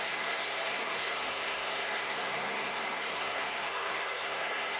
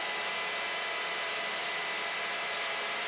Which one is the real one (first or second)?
second